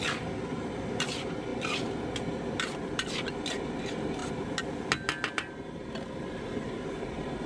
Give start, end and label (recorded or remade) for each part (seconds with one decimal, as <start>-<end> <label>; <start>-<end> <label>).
0.0-4.2 remade; 4.2-5.3 recorded; 5.3-7.5 remade